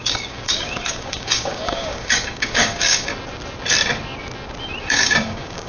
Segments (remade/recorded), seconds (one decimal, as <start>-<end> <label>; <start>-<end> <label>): 0.0-3.1 remade; 3.1-4.8 recorded; 4.8-5.7 remade